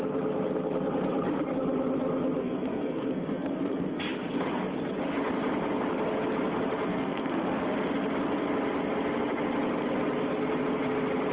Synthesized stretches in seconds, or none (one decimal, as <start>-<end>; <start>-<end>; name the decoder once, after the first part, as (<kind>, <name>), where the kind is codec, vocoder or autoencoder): 2.4-4.0 (codec, SNAC); 6.9-7.6